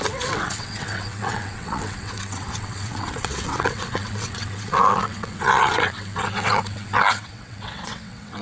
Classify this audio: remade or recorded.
remade